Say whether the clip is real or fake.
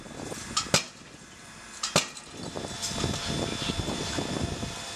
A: real